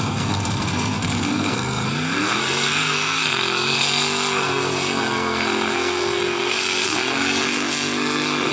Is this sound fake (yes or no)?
yes